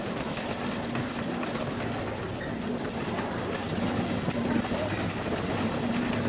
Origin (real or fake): real